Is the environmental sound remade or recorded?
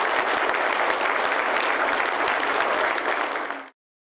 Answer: recorded